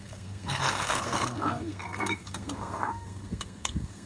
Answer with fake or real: fake